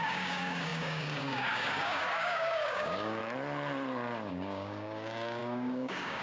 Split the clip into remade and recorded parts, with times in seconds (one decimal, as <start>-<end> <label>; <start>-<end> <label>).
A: 0.0-3.2 remade; 3.2-4.3 recorded; 4.3-6.2 remade